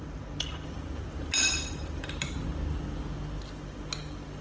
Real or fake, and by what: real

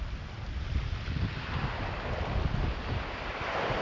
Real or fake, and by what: real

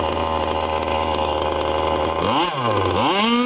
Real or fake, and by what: real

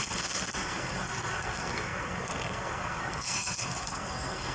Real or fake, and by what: fake, codec, SNAC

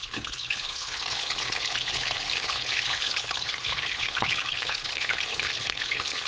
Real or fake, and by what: fake, codec, HILCodec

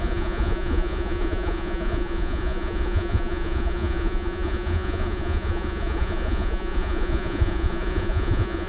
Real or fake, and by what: fake, vocoder, Vocos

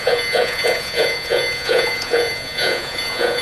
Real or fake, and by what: fake, vocoder, Vocos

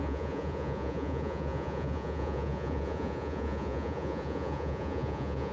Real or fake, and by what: fake, vocoder, Vocos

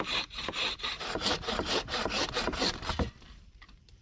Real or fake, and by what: fake, vocoder, BigVGAN v2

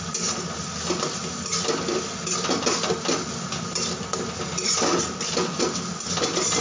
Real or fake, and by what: real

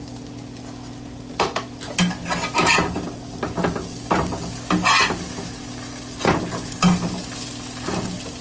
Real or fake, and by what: real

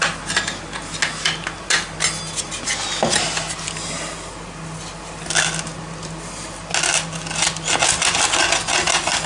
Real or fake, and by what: real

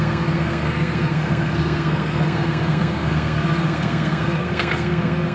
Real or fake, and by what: fake, codec, SNAC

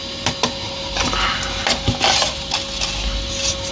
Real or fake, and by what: real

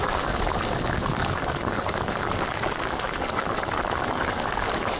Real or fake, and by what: fake, codec, DAC